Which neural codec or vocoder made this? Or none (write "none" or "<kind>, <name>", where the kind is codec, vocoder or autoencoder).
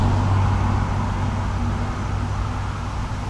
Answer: none